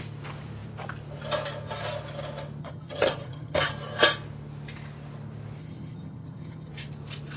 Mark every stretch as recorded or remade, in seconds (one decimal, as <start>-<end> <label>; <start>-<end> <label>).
0.0-2.6 recorded; 2.6-3.7 remade; 3.7-5.6 recorded; 5.6-6.7 remade; 6.7-7.4 recorded